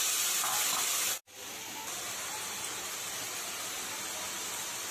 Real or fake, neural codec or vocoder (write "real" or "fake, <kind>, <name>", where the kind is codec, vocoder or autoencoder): real